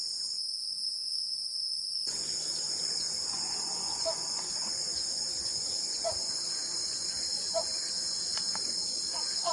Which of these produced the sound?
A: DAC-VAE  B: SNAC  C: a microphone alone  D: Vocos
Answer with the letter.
D